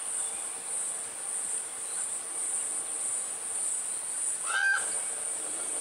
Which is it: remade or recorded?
recorded